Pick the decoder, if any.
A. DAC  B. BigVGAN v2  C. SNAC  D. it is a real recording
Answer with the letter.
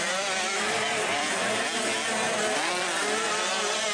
D